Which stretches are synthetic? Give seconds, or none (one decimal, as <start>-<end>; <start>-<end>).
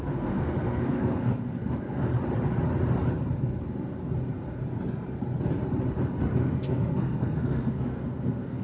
0.0-2.1; 6.4-8.6